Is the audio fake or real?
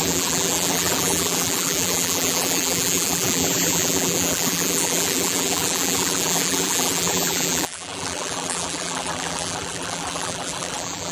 fake